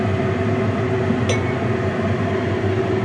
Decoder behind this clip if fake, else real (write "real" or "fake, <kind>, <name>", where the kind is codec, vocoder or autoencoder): real